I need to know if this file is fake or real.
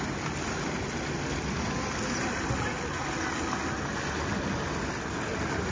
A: real